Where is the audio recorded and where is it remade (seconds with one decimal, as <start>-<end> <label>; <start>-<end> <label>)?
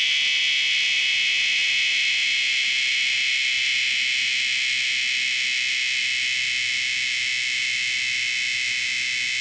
0.0-9.4 recorded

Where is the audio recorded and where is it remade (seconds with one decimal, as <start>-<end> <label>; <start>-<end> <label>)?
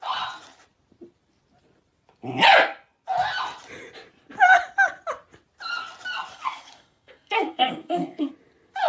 0.0-6.3 recorded; 6.3-8.3 remade; 8.3-8.9 recorded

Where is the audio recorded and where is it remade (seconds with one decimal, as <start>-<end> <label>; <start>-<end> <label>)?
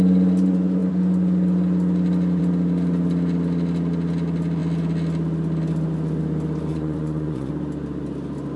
0.0-6.7 recorded; 6.7-7.5 remade; 7.5-8.6 recorded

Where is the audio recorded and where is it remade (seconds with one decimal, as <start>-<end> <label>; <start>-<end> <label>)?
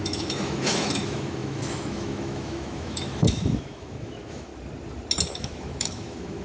0.0-4.5 remade; 4.5-5.3 recorded; 5.3-6.4 remade